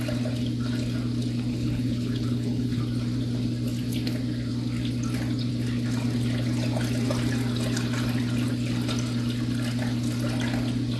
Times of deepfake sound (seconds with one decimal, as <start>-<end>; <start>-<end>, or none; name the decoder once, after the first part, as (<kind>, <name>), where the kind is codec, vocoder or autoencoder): 1.5-2.8 (codec, HILCodec)